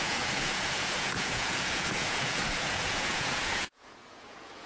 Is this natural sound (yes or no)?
no